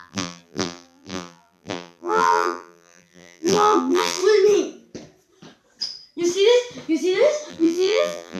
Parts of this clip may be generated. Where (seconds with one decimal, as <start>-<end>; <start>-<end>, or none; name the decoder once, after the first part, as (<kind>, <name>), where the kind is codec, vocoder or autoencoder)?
0.0-4.2 (vocoder, BigVGAN v2); 7.5-8.4